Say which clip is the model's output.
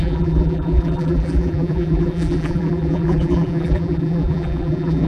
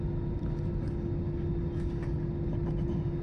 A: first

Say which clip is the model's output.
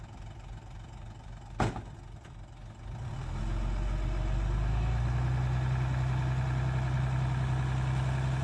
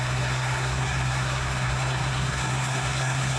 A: second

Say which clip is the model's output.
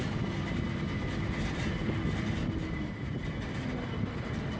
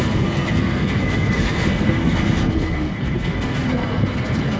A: second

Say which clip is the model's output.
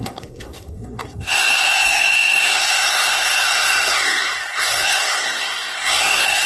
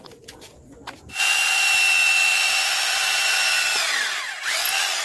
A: first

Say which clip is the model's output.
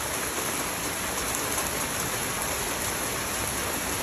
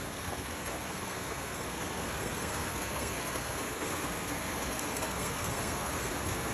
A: second